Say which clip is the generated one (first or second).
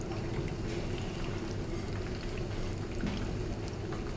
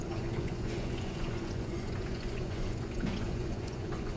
second